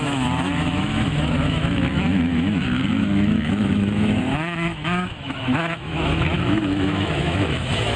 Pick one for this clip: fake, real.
fake